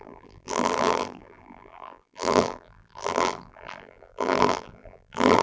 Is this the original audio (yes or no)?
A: no